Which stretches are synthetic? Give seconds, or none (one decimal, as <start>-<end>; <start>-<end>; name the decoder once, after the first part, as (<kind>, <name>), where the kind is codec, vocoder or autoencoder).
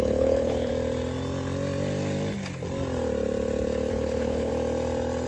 0.0-0.7 (codec, HILCodec); 3.9-4.5